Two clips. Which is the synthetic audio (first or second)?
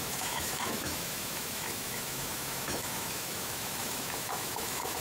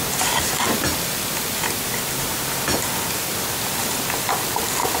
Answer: first